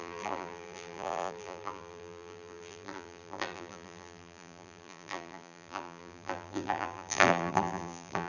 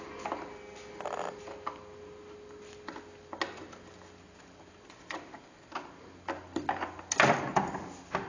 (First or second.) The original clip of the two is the second